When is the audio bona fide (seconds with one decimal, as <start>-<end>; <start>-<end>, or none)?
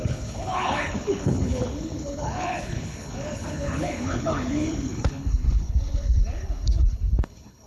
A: none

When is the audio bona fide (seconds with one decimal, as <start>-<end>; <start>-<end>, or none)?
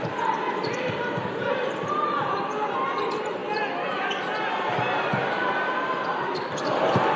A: 0.0-7.2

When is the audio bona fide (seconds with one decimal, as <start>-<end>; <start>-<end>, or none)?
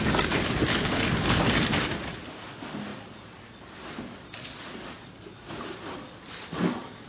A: 0.0-0.7; 1.4-7.1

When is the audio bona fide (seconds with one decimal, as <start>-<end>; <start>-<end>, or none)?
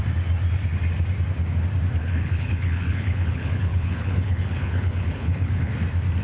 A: 0.0-2.0; 5.7-6.2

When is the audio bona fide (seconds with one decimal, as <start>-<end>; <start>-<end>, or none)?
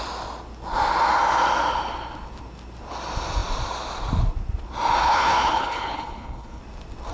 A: 0.0-5.0; 6.6-7.1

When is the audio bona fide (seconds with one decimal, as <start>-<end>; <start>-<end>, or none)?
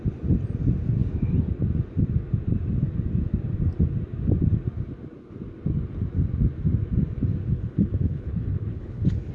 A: 0.0-7.4